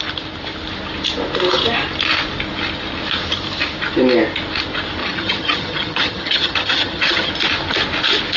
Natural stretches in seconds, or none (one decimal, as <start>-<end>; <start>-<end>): 0.0-5.0; 7.3-8.4